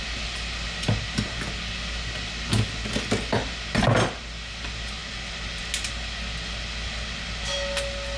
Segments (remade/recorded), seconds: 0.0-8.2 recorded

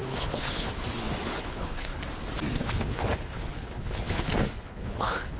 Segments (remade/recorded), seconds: 0.0-0.7 remade; 0.7-1.3 recorded; 1.3-2.0 remade; 2.0-2.6 recorded; 2.6-5.4 remade